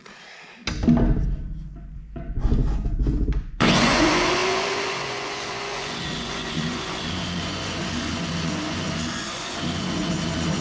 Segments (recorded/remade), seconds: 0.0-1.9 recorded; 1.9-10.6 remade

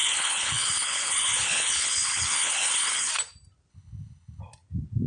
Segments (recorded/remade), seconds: 0.0-3.1 remade; 3.1-3.7 recorded; 3.7-4.4 remade; 4.4-5.1 recorded

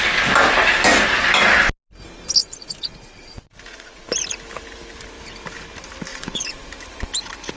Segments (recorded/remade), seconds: 0.0-2.4 recorded; 2.4-4.1 remade; 4.1-6.1 recorded; 6.1-6.7 remade; 6.7-7.6 recorded

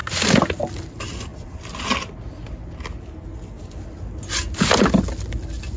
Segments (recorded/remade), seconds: 0.0-5.8 recorded